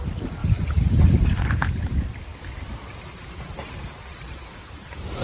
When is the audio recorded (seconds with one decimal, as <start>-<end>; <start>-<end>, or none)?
2.3-4.3